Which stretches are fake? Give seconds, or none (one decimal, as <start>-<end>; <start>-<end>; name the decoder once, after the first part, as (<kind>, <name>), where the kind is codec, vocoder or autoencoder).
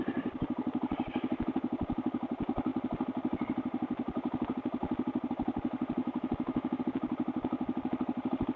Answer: 6.0-6.8 (autoencoder, DAC-VAE)